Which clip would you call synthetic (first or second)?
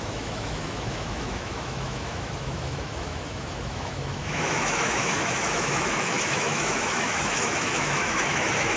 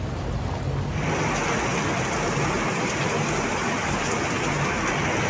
first